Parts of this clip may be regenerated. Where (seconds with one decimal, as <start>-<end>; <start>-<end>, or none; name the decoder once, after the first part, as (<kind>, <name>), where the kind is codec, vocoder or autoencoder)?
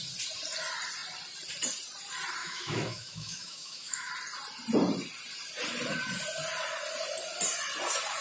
2.4-4.1 (autoencoder, DAC-VAE)